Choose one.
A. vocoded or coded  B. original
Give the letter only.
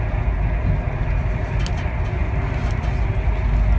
B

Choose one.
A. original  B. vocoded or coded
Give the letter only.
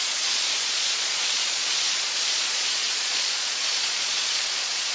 B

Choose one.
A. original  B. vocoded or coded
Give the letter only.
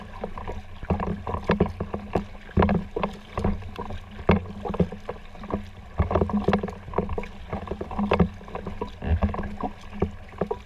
A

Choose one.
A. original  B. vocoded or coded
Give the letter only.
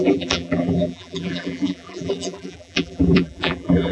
B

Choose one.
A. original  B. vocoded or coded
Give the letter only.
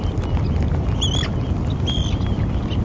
A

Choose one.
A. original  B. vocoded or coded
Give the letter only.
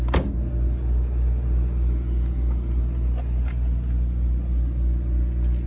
A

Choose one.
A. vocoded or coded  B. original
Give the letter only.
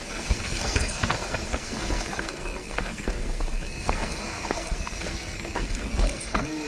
A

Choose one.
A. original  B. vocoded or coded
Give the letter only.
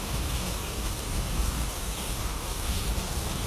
B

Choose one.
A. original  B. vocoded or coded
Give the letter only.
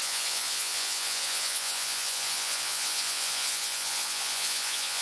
B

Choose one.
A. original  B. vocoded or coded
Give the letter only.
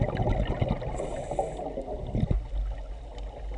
A